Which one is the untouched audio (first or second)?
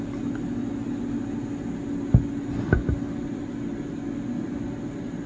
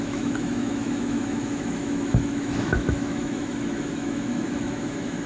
first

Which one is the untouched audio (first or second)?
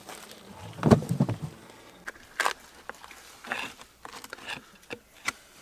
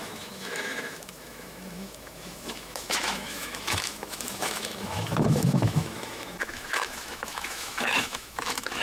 first